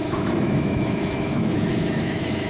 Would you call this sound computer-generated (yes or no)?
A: yes